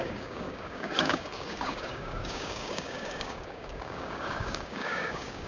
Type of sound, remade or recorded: remade